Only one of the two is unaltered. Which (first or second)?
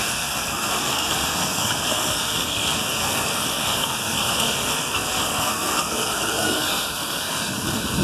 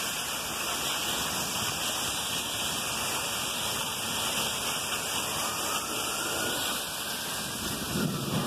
second